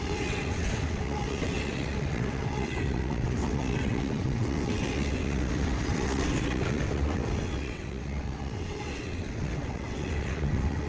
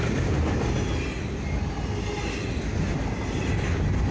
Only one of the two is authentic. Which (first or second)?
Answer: second